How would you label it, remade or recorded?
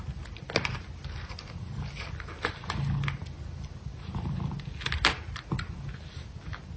recorded